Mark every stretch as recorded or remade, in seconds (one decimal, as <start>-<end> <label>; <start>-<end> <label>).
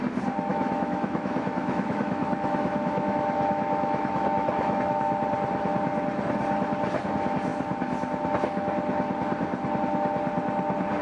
0.0-0.5 recorded; 0.5-5.0 remade; 5.0-11.0 recorded